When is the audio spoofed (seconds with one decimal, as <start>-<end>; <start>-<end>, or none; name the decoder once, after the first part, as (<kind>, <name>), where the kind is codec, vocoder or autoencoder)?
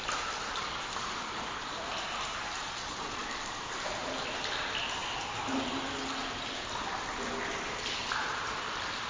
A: 2.6-3.2 (vocoder, Vocos)